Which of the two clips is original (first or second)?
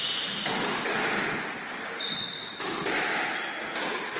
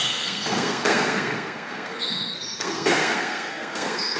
first